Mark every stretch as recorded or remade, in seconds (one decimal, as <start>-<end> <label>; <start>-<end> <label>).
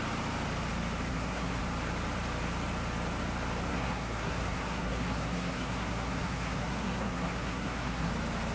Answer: 0.0-1.1 recorded; 1.1-1.6 remade; 1.6-3.7 recorded; 3.7-8.1 remade; 8.1-8.5 recorded